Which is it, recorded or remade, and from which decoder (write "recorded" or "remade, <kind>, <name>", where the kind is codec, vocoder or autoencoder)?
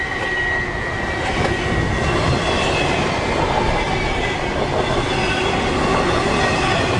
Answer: recorded